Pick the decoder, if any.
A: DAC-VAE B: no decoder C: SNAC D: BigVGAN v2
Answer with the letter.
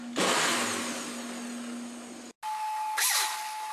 B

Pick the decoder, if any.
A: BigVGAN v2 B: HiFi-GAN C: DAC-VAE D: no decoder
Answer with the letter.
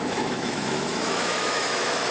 C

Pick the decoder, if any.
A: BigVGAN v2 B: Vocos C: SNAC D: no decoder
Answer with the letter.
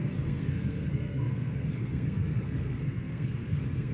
C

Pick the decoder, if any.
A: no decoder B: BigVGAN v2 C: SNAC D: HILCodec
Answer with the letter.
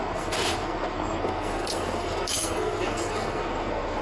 C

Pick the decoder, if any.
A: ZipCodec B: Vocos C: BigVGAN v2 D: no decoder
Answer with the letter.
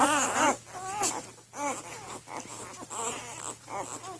D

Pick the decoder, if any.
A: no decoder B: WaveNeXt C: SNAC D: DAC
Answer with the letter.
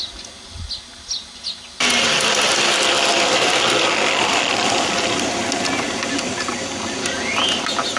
A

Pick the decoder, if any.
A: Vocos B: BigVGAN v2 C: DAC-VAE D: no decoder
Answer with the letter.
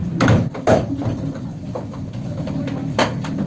D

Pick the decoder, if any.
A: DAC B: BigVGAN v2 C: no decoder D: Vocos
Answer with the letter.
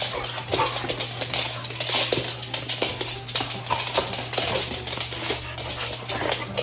C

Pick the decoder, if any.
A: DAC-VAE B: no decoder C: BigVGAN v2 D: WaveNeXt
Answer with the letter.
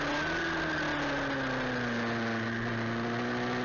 B